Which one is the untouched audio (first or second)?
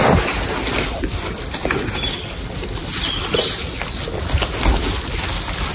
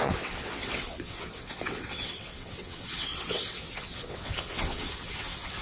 first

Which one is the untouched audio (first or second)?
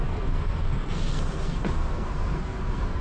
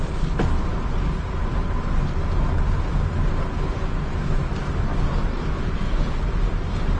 second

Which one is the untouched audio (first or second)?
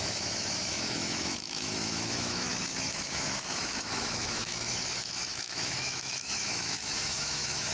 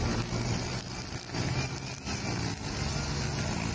second